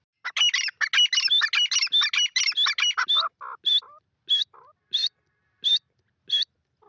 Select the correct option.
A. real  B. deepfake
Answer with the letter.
A